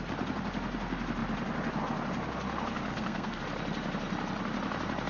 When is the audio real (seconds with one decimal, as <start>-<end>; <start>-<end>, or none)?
0.0-2.9; 3.4-5.1

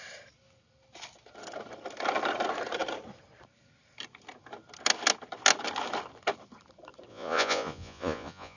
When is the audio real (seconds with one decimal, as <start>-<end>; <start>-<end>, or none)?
0.0-7.1

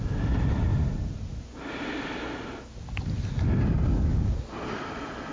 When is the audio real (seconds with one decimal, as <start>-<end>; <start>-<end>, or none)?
0.0-5.3

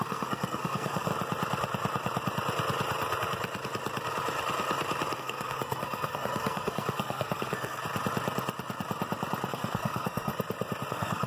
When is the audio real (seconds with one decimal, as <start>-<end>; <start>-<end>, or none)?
1.1-5.2; 7.8-9.5; 10.3-10.9